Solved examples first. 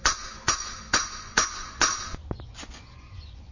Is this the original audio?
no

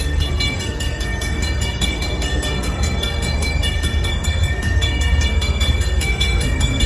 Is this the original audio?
no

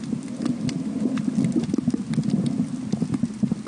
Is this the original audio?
yes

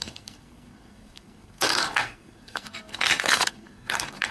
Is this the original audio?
no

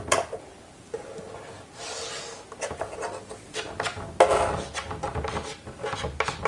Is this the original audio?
yes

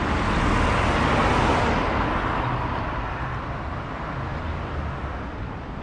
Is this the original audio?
yes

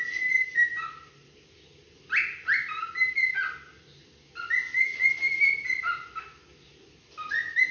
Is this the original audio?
yes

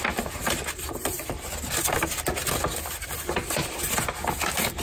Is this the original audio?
yes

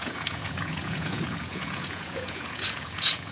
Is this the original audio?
no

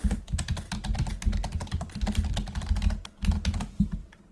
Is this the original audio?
yes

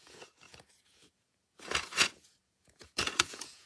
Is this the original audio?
no